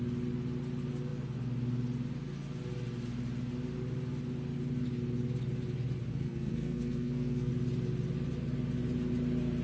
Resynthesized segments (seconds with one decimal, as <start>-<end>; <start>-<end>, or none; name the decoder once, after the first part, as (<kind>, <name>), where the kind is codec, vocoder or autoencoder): 6.1-7.5 (codec, SNAC)